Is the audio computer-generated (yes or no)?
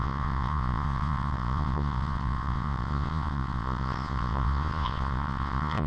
yes